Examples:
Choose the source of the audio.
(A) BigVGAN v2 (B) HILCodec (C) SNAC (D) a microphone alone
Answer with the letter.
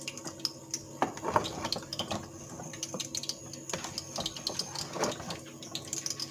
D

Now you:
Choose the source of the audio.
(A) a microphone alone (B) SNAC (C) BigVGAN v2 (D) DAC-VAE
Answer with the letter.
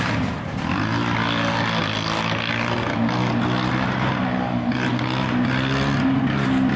A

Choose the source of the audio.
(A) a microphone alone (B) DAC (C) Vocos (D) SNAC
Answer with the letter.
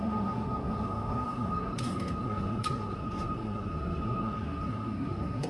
D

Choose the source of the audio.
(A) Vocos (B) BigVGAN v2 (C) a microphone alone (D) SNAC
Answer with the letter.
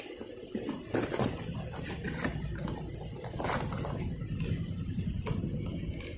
C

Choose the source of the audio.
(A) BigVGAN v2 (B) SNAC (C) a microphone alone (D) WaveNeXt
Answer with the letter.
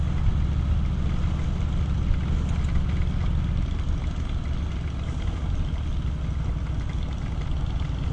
C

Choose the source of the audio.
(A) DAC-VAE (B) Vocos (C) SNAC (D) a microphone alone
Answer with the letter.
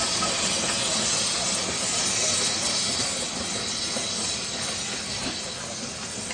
D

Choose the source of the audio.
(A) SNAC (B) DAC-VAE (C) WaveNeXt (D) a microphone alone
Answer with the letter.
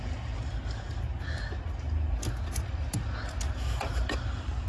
D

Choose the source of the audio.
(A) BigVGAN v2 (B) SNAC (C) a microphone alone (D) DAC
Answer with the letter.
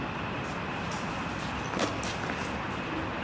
C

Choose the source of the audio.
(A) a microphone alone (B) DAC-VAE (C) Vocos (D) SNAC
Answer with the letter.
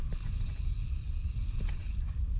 A